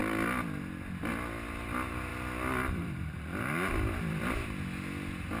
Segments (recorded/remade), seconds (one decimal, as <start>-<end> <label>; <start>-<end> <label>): 0.0-2.1 recorded; 2.1-4.4 remade; 4.4-5.4 recorded